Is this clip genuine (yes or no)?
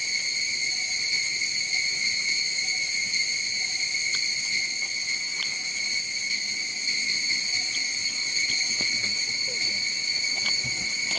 yes